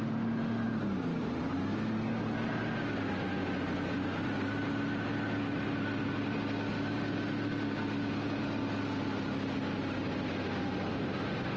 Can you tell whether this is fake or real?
real